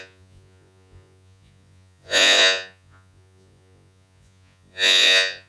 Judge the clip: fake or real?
fake